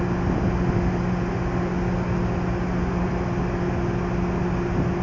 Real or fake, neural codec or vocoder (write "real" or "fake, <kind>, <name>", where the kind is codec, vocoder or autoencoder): real